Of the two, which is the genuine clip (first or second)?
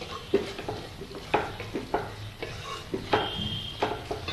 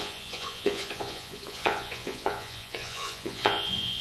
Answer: first